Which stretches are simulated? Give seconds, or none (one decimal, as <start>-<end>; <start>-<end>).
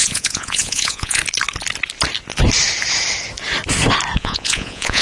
0.0-1.2; 4.2-5.0